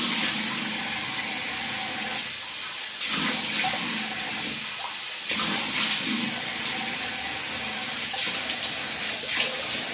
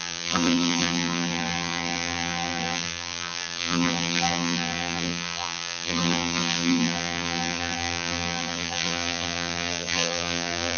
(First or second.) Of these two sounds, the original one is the first